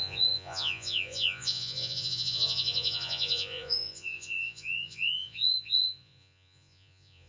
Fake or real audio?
fake